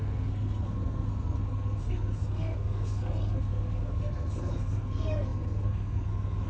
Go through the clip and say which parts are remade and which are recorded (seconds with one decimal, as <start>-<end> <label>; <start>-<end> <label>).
0.0-6.5 remade